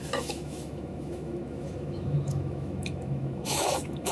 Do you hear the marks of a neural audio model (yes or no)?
yes